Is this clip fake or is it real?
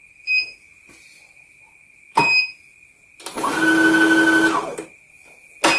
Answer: real